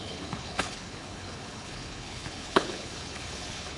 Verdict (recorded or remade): remade